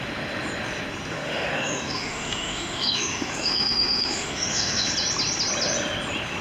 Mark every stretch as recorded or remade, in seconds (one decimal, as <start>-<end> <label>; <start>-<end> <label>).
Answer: 0.0-1.1 recorded; 1.1-4.9 remade; 4.9-6.4 recorded